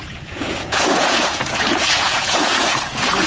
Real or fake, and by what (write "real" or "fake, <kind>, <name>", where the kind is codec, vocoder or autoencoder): fake, vocoder, Vocos